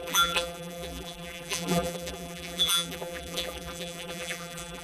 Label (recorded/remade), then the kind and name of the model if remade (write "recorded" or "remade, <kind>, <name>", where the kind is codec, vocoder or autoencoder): remade, vocoder, BigVGAN v2